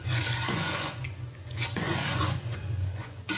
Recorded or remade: remade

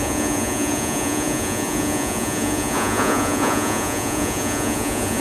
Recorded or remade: remade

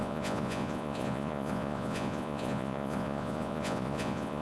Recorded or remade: remade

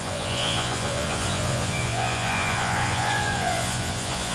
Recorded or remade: remade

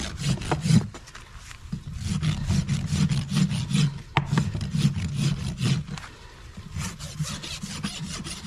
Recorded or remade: recorded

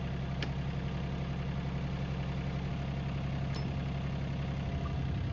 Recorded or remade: recorded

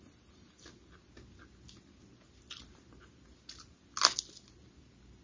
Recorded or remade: recorded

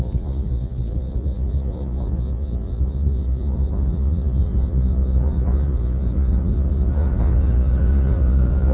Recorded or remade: remade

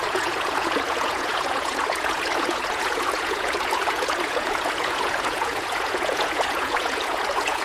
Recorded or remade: remade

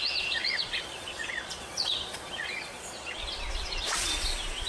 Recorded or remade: remade